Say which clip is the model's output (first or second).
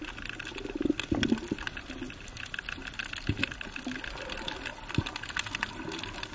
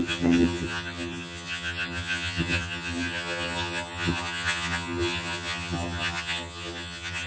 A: second